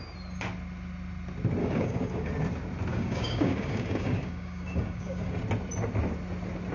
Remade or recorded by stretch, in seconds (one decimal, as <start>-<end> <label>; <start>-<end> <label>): 0.0-1.6 recorded; 1.6-2.3 remade; 2.3-2.9 recorded; 2.9-5.4 remade; 5.4-6.7 recorded